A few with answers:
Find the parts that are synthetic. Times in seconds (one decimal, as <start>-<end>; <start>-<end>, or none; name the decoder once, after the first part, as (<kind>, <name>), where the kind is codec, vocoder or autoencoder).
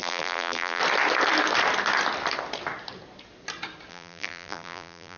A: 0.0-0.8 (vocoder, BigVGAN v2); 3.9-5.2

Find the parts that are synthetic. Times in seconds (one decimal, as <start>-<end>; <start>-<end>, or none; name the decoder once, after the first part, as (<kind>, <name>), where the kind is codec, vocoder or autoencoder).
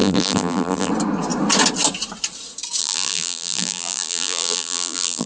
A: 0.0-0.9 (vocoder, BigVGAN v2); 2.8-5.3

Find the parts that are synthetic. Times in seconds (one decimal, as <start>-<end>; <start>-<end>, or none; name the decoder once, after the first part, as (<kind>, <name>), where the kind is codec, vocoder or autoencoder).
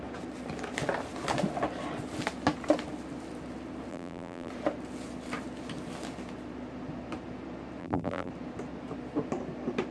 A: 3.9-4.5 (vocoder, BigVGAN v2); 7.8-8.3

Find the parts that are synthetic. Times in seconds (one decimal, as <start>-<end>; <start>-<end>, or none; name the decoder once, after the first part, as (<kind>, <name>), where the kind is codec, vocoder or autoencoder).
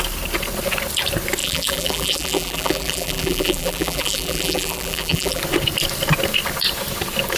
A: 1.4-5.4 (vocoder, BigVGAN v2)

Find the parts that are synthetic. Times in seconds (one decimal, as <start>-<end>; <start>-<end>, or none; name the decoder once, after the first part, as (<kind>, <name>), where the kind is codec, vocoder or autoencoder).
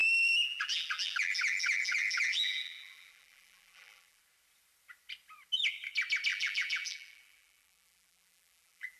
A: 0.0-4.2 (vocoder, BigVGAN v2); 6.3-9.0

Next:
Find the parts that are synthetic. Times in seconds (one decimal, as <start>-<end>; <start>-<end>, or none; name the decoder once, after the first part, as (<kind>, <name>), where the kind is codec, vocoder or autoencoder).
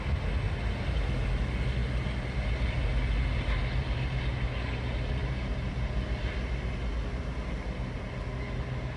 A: none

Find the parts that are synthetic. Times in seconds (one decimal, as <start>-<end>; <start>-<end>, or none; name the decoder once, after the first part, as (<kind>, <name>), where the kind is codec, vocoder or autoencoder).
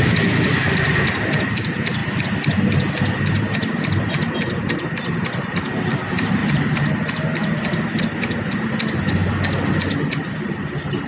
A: 2.0-2.9 (vocoder, BigVGAN v2); 6.4-8.0; 9.2-11.1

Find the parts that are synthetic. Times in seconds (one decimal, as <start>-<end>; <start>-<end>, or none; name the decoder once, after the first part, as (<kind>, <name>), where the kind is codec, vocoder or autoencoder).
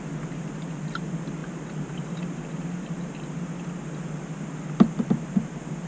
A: none